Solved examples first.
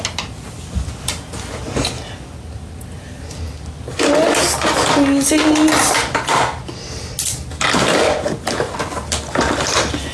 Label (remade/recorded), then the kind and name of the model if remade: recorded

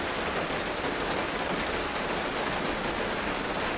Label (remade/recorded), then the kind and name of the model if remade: recorded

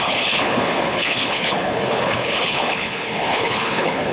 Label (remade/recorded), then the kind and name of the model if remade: remade, codec, HILCodec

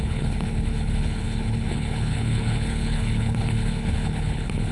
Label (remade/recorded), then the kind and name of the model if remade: remade, codec, HILCodec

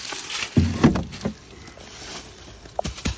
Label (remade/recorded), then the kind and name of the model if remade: recorded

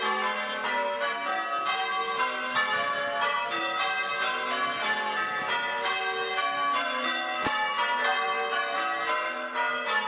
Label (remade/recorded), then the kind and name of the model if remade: recorded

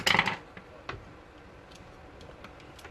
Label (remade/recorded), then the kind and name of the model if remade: recorded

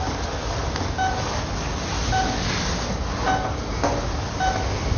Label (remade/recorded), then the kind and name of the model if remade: recorded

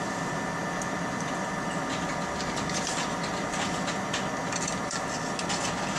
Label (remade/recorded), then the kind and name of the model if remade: recorded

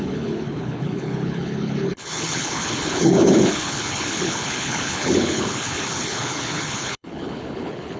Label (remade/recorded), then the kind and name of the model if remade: remade, codec, HILCodec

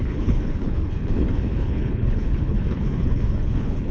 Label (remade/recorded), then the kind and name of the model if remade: remade, codec, HILCodec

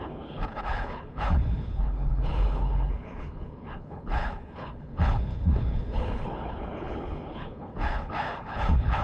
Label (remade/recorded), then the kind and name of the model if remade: remade, codec, HILCodec